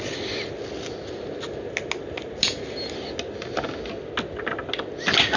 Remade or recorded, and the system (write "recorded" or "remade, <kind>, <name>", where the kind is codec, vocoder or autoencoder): recorded